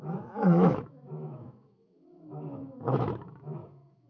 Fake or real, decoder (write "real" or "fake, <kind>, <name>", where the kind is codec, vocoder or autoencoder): fake, autoencoder, DAC-VAE